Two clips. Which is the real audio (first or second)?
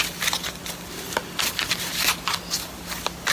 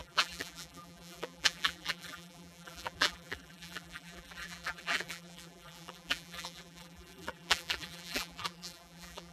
first